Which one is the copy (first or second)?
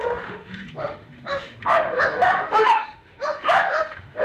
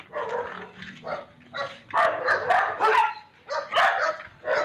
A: first